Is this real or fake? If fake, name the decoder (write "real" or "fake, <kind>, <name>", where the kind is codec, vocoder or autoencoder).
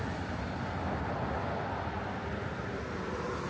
real